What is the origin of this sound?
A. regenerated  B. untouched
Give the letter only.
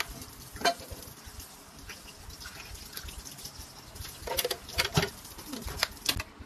B